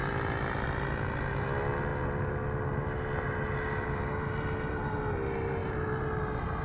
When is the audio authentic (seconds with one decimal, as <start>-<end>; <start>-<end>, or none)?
0.0-6.6